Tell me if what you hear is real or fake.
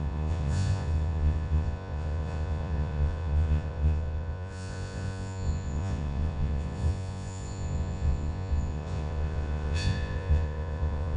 fake